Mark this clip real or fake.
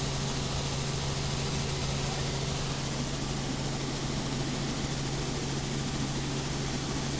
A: real